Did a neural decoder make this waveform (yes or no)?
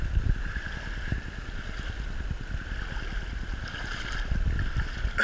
no